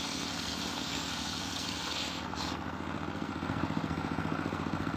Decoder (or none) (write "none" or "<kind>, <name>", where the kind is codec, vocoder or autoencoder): codec, SNAC